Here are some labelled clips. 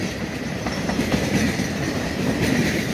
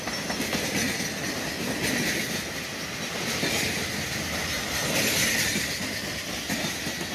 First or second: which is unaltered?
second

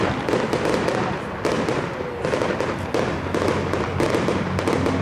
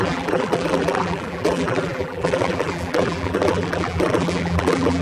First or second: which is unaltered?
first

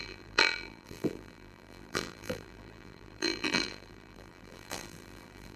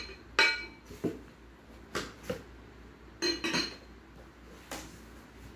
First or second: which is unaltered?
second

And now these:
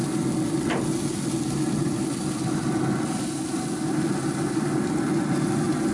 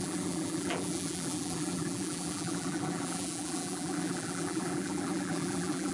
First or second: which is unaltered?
first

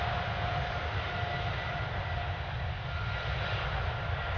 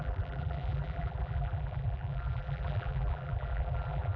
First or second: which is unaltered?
first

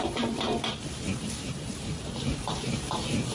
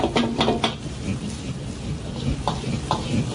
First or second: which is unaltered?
second